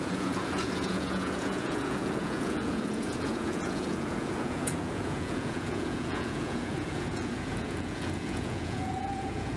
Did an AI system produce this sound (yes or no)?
yes